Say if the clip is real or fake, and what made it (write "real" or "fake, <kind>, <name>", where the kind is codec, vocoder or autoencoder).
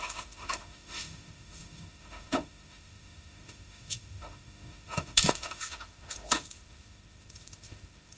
fake, autoencoder, DAC-VAE